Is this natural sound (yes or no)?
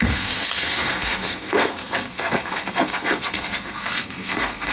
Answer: no